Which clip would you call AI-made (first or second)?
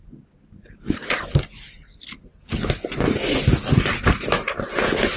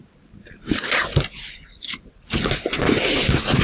second